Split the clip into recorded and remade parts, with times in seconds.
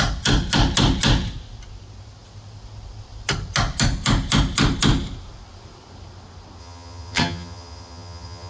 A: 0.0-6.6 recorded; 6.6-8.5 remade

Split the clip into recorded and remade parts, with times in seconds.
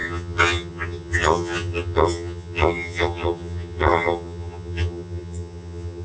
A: 0.0-6.0 remade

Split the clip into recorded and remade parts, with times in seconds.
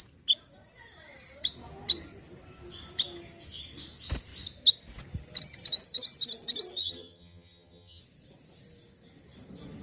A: 0.0-6.8 recorded; 6.8-8.0 remade; 8.0-9.8 recorded